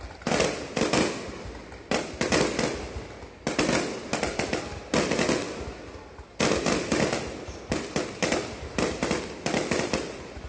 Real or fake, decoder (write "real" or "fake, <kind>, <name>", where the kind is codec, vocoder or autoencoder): real